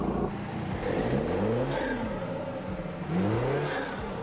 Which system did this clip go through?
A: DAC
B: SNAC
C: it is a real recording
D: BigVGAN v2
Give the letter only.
C